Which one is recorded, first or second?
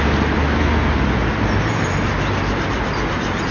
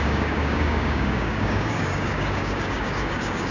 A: first